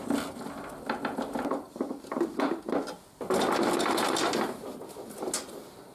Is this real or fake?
real